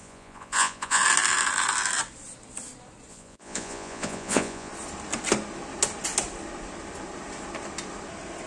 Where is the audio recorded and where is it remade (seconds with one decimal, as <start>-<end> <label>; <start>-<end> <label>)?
0.0-1.0 remade; 1.0-3.1 recorded; 3.1-4.7 remade; 4.7-8.5 recorded